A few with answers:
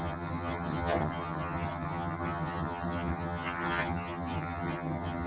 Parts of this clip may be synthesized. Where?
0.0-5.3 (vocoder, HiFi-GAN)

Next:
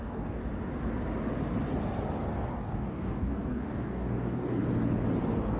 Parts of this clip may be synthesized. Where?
0.0-0.4 (codec, DAC); 2.5-4.6

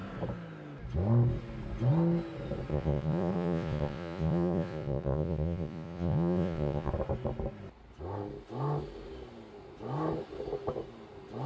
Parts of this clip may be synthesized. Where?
2.7-6.9 (vocoder, Vocos)

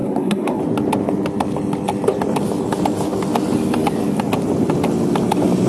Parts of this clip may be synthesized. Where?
0.0-0.6 (codec, SNAC)